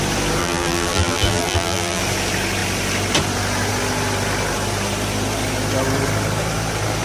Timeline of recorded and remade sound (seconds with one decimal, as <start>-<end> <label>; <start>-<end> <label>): 0.0-0.4 recorded; 0.4-2.0 remade; 2.0-7.0 recorded